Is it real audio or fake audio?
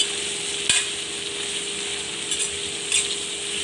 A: real